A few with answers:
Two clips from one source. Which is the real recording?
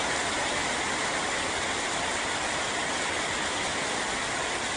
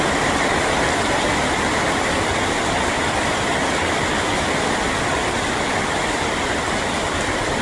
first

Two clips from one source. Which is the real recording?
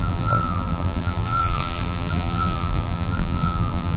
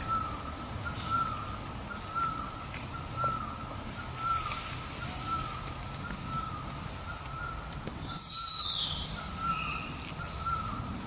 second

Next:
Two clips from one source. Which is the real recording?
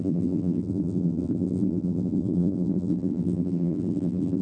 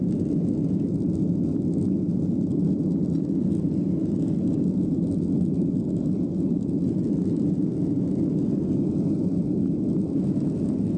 second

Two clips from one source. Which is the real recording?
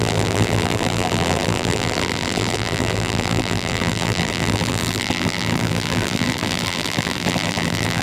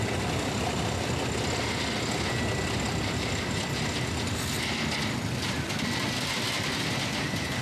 second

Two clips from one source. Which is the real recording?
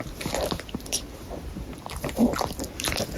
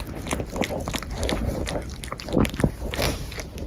second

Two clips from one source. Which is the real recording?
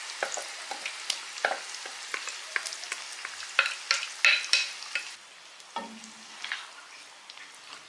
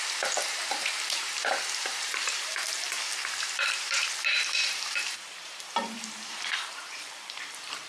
first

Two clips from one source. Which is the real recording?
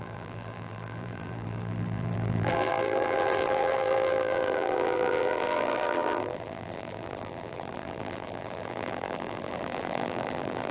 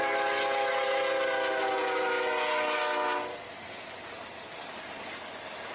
second